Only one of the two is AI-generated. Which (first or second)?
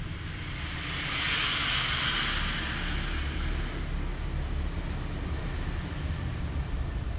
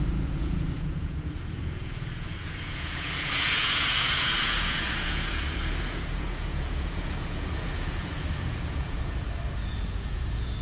second